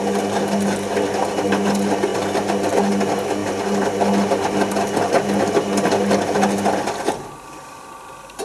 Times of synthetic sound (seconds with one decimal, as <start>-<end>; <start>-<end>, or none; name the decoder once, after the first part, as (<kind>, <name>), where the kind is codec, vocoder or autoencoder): none